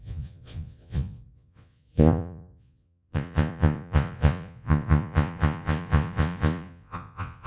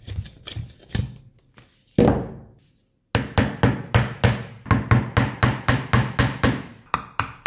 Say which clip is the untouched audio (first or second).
second